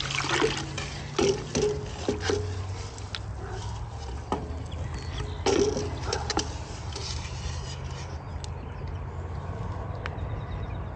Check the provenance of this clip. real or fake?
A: real